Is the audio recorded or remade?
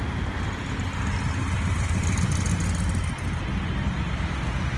recorded